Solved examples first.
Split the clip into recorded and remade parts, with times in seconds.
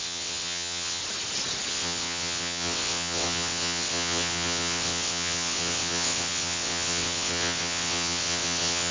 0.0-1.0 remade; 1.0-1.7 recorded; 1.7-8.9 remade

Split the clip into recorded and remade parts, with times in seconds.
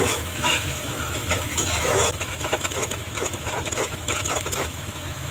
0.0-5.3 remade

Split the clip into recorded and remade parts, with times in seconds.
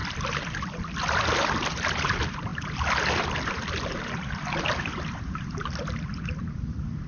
0.0-1.6 recorded; 1.6-7.1 remade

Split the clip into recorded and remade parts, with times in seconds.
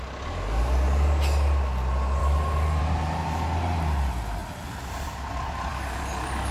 0.0-2.2 recorded; 2.2-2.8 remade; 2.8-5.7 recorded; 5.7-6.5 remade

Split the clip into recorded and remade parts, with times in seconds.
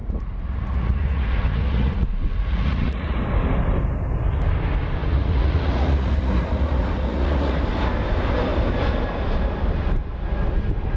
0.0-3.2 remade; 3.2-5.0 recorded; 5.0-7.6 remade; 7.6-11.0 recorded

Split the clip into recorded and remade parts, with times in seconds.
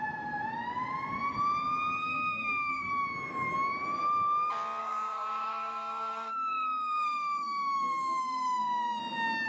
0.0-2.0 recorded; 2.0-2.9 remade; 2.9-4.8 recorded; 4.8-9.0 remade; 9.0-9.5 recorded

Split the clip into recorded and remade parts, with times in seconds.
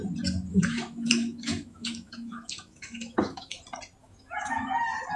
0.0-0.5 recorded; 0.5-3.6 remade; 3.6-4.0 recorded; 4.0-4.7 remade; 4.7-5.2 recorded